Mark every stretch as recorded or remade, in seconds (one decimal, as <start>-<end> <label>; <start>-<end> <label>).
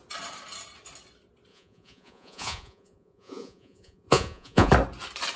0.0-1.5 recorded; 1.5-4.7 remade; 4.7-5.4 recorded